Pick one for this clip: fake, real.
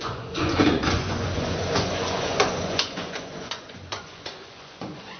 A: fake